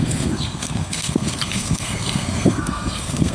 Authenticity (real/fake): fake